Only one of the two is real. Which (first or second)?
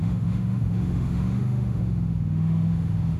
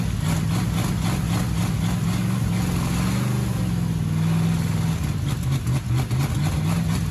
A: second